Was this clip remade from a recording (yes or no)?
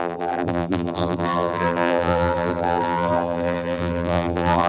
yes